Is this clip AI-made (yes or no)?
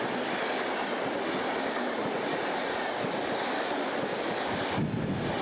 no